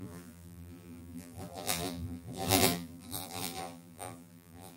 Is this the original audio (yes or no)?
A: no